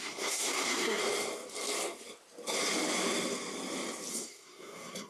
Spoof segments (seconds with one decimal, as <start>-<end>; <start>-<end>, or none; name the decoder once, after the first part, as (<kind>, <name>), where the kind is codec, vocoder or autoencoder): 0.0-1.0 (codec, SNAC); 4.1-5.1